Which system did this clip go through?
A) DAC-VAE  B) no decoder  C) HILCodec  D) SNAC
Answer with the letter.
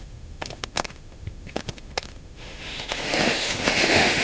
A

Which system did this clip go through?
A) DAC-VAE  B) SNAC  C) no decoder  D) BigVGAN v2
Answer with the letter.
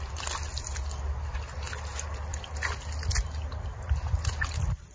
C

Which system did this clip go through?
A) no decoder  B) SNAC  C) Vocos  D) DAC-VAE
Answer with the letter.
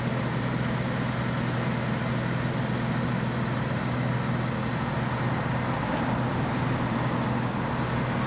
A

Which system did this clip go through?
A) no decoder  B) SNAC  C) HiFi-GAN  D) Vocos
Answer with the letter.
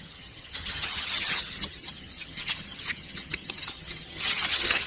C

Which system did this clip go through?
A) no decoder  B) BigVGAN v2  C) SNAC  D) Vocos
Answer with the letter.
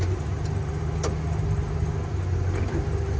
A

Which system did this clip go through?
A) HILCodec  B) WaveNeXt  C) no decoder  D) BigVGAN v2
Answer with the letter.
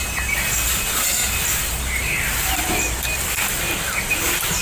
C